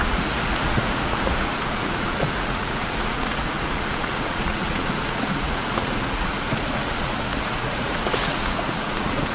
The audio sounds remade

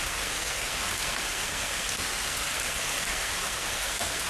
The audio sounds remade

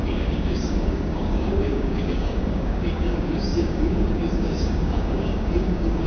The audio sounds remade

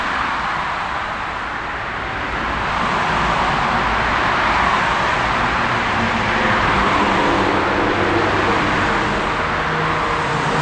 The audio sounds recorded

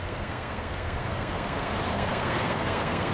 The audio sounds remade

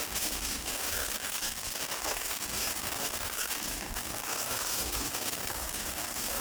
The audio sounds remade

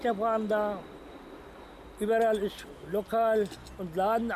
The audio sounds recorded